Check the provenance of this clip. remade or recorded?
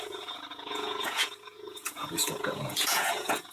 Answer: remade